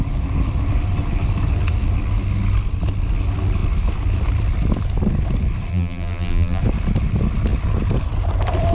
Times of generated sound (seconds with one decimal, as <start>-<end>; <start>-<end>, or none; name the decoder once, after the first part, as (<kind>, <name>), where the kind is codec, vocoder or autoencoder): 5.7-6.6 (vocoder, BigVGAN v2)